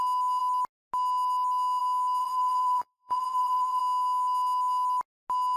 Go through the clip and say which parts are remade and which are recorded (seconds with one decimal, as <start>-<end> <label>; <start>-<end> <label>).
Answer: 0.0-2.2 recorded; 2.2-3.8 remade; 3.8-5.6 recorded